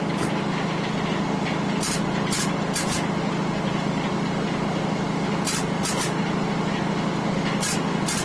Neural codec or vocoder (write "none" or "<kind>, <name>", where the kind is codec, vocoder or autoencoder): none